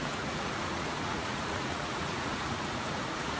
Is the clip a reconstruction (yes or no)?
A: yes